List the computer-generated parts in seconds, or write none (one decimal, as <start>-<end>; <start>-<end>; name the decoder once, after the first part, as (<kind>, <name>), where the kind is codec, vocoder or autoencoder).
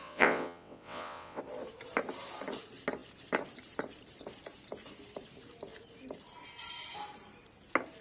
0.0-1.4 (vocoder, WaveNeXt)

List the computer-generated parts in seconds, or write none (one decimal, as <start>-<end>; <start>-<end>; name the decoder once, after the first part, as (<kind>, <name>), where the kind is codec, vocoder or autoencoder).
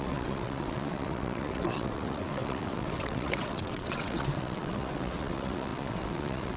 0.0-6.6 (vocoder, WaveNeXt)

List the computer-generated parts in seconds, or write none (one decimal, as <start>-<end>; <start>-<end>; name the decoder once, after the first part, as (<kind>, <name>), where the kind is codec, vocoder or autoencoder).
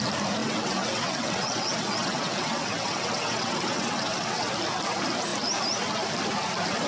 0.4-4.5 (vocoder, WaveNeXt)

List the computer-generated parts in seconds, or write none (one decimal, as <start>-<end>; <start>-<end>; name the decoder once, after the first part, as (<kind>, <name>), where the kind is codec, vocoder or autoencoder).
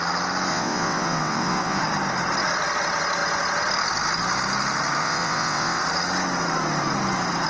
0.5-1.8 (vocoder, WaveNeXt); 5.0-5.8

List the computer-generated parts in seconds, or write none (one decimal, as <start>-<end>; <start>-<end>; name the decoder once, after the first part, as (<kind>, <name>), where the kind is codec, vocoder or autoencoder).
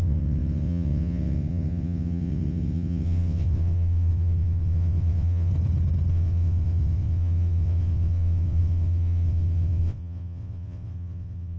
0.0-5.5 (vocoder, WaveNeXt); 6.1-11.6